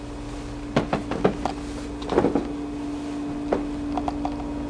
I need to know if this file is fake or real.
real